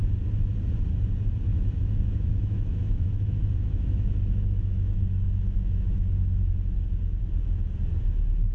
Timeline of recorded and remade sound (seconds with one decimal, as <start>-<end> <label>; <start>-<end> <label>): 0.0-1.5 recorded; 1.5-6.5 remade; 6.5-8.5 recorded